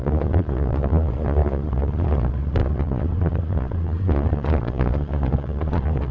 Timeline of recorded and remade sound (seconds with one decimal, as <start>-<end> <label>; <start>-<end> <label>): 0.0-6.1 remade